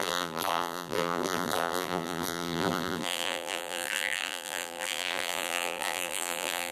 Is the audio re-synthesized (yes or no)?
yes